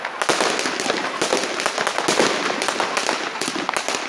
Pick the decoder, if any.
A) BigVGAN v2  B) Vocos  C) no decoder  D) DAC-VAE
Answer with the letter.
C